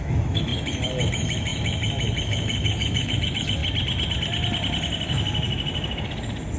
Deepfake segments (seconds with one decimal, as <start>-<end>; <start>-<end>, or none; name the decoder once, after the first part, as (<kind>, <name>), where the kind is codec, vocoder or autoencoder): 0.0-3.6 (autoencoder, DAC-VAE)